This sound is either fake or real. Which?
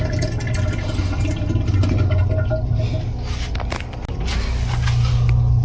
real